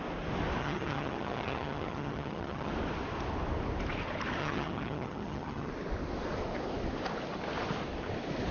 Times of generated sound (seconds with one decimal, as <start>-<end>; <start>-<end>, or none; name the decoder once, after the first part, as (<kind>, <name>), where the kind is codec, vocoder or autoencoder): 0.6-2.7 (vocoder, HiFi-GAN); 4.4-5.7

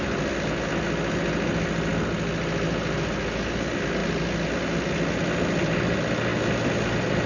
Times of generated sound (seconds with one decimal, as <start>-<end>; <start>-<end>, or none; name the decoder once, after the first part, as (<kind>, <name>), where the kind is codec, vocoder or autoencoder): none

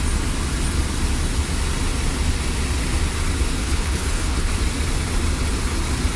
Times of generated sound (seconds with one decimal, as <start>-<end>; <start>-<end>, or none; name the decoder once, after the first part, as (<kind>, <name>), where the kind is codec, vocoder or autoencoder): 3.6-4.5 (codec, HILCodec)

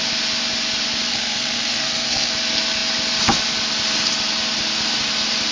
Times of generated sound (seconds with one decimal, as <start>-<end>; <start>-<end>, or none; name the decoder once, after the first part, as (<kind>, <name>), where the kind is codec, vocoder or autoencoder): 1.1-2.3 (codec, SNAC)

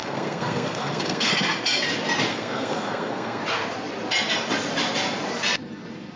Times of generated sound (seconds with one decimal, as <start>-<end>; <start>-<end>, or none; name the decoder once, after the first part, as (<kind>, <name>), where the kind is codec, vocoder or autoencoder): 0.0-1.3 (codec, SNAC); 2.3-3.4

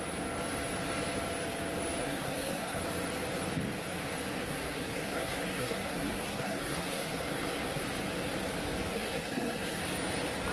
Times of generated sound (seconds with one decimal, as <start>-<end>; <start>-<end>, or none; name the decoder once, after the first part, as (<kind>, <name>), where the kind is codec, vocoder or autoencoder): 2.0-2.8 (codec, SNAC); 4.4-7.8; 8.9-9.8

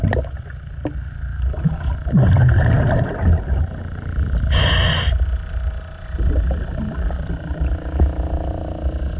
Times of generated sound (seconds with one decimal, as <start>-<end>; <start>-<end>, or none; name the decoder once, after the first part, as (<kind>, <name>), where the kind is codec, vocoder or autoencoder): none